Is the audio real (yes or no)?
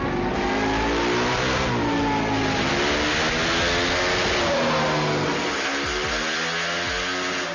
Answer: yes